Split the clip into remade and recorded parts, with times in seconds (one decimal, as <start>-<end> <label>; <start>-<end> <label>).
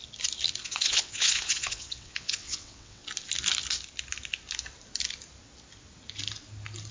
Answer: 0.0-0.6 recorded; 0.6-3.0 remade; 3.0-6.9 recorded